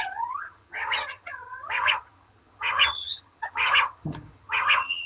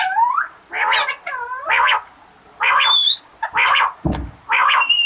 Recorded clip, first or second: second